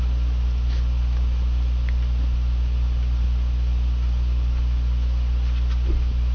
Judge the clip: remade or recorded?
recorded